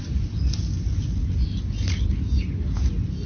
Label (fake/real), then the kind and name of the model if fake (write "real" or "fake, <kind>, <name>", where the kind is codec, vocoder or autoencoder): real